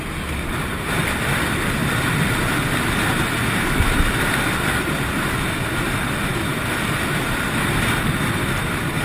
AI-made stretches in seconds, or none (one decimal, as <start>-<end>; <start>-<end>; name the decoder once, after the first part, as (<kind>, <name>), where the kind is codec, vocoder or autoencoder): 6.4-7.6 (vocoder, BigVGAN v2)